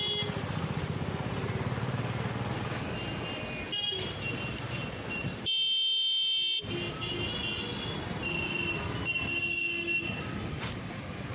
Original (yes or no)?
yes